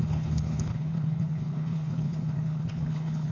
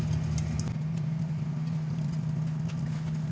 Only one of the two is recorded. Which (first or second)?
second